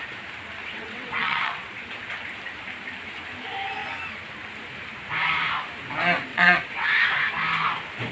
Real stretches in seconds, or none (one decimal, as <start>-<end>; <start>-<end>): 0.0-0.6; 1.7-6.3; 7.0-8.1